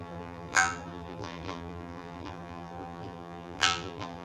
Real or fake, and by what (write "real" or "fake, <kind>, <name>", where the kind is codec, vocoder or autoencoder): fake, vocoder, BigVGAN v2